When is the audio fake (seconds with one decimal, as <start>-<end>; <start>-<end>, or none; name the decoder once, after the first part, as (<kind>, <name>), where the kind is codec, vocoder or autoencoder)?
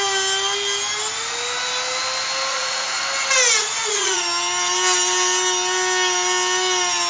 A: 2.5-3.0 (vocoder, Vocos); 3.6-4.2